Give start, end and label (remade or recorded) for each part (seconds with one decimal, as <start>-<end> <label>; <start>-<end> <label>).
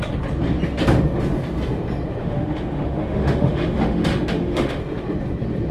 0.0-2.2 recorded; 2.2-4.8 remade; 4.8-5.7 recorded